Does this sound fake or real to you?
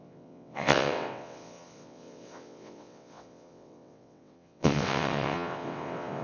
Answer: fake